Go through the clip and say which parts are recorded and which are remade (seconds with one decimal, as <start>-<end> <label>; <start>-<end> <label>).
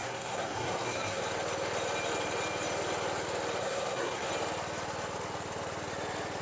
0.0-1.2 remade; 1.2-3.6 recorded; 3.6-4.3 remade; 4.3-6.4 recorded